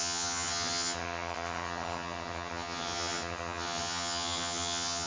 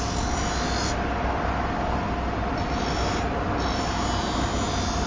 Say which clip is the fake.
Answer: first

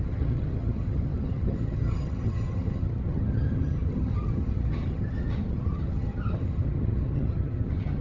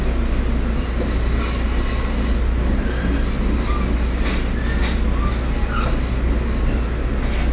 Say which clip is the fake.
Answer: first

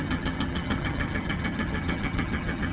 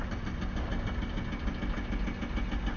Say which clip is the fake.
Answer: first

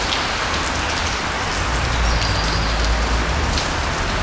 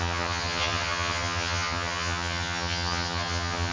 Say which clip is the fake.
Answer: second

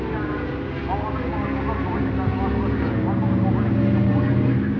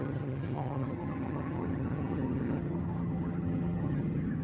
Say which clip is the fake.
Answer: second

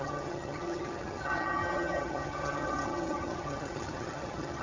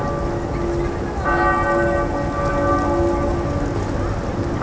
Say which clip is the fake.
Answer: first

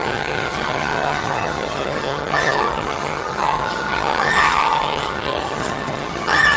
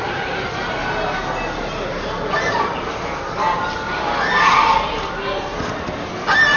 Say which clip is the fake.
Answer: first